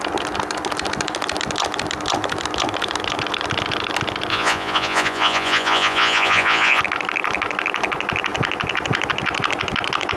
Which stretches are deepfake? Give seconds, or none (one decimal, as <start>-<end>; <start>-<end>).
4.3-6.8